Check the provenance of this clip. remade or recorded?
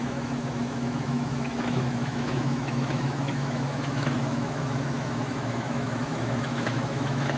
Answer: remade